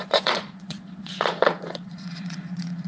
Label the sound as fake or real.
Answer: fake